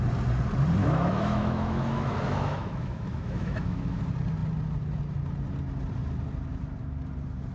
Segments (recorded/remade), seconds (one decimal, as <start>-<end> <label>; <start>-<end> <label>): 0.0-0.8 recorded; 0.8-4.0 remade; 4.0-7.5 recorded